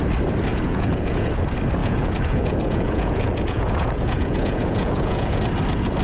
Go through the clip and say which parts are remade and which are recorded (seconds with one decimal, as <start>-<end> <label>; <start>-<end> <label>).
0.0-0.5 recorded; 0.5-1.3 remade; 1.3-1.8 recorded; 1.8-5.4 remade; 5.4-6.0 recorded